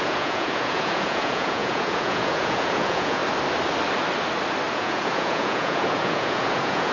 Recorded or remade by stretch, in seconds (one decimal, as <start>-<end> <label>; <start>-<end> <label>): 0.0-3.2 remade; 3.2-4.7 recorded; 4.7-6.9 remade